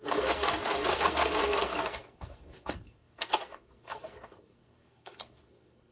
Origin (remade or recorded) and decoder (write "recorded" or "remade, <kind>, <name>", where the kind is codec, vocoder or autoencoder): remade, codec, SNAC